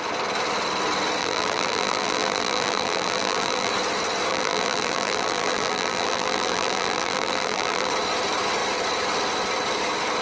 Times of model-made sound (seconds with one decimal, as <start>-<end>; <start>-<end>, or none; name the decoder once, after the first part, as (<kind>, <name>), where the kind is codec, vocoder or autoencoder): 1.2-3.7 (vocoder, BigVGAN v2); 4.3-7.9